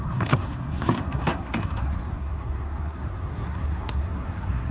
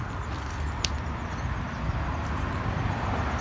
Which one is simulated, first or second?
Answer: first